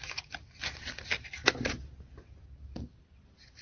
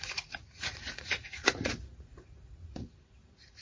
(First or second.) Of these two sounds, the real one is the first